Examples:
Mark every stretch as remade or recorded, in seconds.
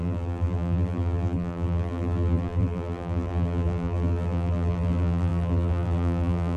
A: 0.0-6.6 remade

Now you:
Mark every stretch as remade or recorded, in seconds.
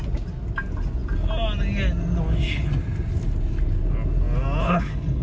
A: 0.0-4.6 recorded; 4.6-5.2 remade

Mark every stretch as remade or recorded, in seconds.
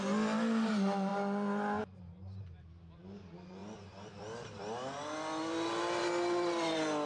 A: 0.0-7.1 recorded